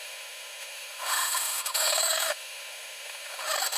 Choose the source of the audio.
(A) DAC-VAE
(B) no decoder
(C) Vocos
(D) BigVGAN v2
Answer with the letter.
A